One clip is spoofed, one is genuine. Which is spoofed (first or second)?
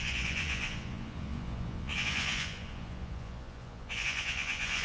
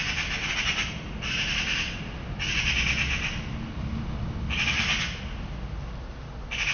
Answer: first